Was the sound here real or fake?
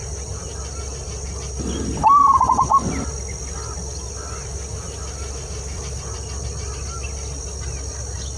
real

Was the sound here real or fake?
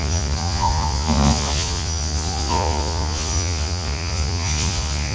fake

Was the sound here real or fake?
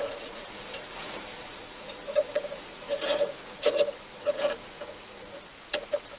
fake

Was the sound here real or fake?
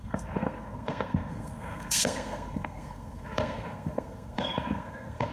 fake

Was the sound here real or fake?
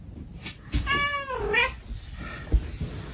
real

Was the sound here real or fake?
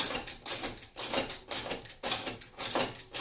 real